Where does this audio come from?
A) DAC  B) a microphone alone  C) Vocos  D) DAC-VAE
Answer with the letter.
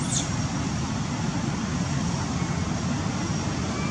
B